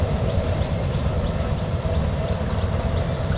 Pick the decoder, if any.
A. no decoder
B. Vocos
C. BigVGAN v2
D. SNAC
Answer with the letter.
A